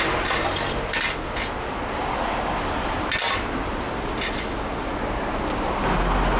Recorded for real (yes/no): yes